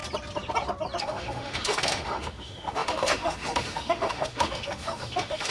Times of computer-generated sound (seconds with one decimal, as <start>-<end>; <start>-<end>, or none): 1.0-5.5